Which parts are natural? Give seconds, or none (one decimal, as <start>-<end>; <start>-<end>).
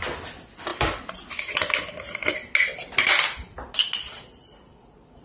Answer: 0.0-5.2